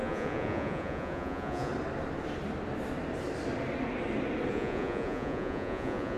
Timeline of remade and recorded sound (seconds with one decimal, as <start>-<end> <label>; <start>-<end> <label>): 0.0-1.7 remade; 1.7-4.5 recorded; 4.5-6.2 remade